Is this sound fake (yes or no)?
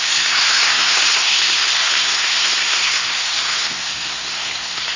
yes